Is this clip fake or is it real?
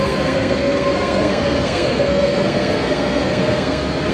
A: fake